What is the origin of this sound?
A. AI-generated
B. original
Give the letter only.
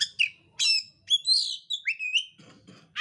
B